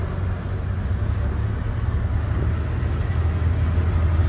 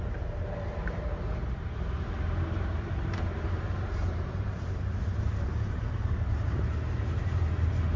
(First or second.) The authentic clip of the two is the first